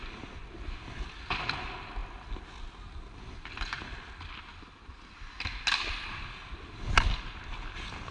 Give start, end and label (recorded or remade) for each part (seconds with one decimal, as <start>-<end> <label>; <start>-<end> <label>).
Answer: 0.0-8.1 recorded